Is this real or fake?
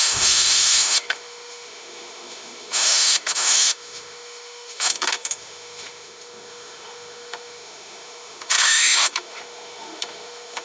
fake